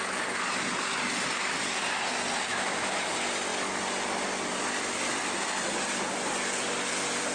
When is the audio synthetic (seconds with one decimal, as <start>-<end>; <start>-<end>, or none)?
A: 2.5-3.1